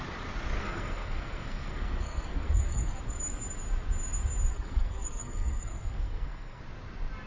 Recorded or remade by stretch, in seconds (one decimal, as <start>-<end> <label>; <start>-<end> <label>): 0.0-0.6 recorded; 0.6-3.0 remade; 3.0-4.5 recorded; 4.5-6.6 remade; 6.6-7.3 recorded